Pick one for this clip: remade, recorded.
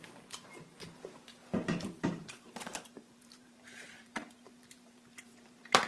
remade